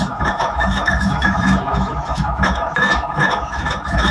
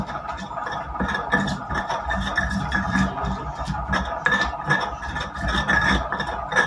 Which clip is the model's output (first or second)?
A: first